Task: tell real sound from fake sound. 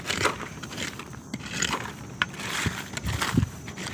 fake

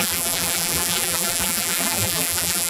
fake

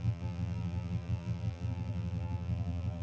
fake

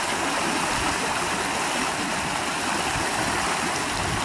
real